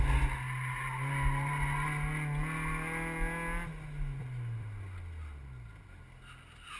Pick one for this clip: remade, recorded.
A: recorded